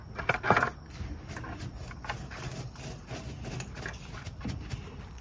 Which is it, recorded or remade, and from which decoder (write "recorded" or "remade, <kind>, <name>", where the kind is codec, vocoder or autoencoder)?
recorded